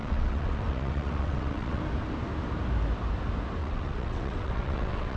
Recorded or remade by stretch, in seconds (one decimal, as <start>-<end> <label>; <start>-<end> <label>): 0.0-1.8 remade; 1.8-3.6 recorded; 3.6-5.2 remade